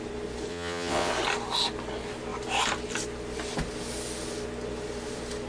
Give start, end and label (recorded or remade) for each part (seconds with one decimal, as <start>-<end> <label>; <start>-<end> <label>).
0.0-0.5 recorded; 0.5-1.1 remade; 1.1-5.5 recorded